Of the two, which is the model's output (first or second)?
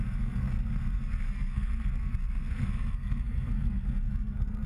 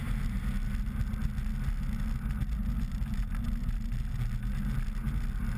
first